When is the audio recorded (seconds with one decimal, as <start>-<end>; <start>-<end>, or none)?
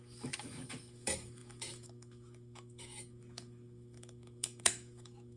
none